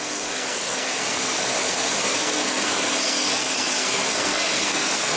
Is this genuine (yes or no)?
no